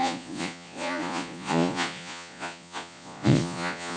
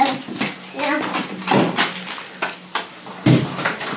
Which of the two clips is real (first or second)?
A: second